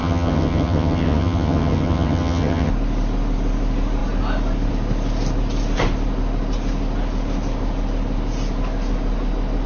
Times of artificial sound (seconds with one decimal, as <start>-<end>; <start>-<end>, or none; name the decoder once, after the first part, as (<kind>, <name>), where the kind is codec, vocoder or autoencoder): 0.0-2.7 (vocoder, HiFi-GAN)